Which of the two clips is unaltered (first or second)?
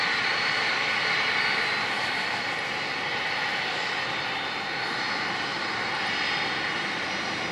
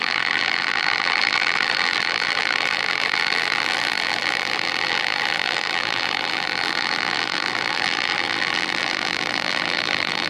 first